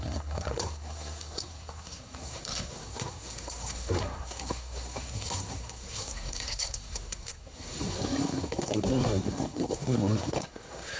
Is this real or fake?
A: fake